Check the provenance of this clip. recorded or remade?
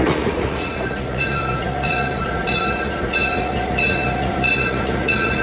remade